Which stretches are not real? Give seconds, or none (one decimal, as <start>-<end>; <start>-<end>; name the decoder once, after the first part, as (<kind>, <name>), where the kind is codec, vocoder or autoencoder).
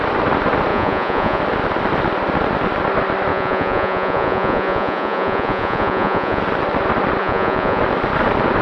0.7-1.4 (vocoder, Vocos); 3.3-6.4; 7.2-7.8